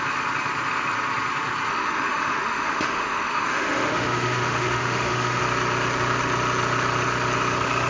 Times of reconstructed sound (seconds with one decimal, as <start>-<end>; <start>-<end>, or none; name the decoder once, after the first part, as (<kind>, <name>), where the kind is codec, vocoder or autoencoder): 1.7-5.4 (autoencoder, DAC-VAE)